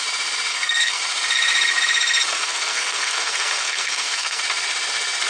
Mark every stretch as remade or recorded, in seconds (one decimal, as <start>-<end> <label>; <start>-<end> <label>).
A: 0.0-0.5 recorded; 0.5-1.0 remade; 1.0-2.3 recorded; 2.3-4.4 remade; 4.4-5.3 recorded